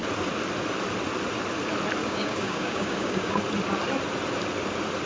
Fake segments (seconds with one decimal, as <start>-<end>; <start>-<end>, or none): 2.0-3.4